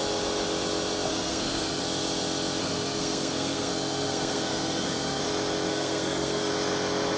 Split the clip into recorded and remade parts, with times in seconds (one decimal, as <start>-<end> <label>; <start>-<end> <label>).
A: 0.0-1.1 recorded; 1.1-1.8 remade; 1.8-2.6 recorded; 2.6-5.2 remade; 5.2-5.7 recorded; 5.7-6.5 remade; 6.5-7.2 recorded